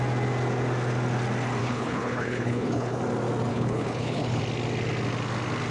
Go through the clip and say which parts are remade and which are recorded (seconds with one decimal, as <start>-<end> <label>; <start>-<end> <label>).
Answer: 0.0-1.6 recorded; 1.6-3.0 remade; 3.0-3.5 recorded; 3.5-4.4 remade; 4.4-5.7 recorded

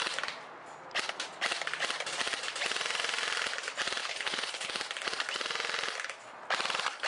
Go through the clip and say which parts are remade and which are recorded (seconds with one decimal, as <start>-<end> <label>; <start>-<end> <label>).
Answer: 0.0-4.0 recorded; 4.0-4.7 remade; 4.7-7.1 recorded

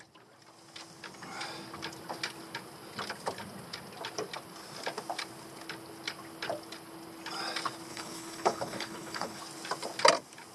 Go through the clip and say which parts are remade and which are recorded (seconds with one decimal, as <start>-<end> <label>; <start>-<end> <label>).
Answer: 0.0-7.9 recorded; 7.9-9.4 remade; 9.4-10.5 recorded

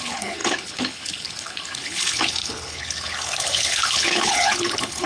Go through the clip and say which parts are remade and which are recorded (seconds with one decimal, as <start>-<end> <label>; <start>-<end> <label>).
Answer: 0.0-5.1 remade